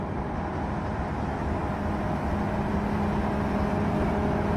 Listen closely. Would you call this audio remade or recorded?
recorded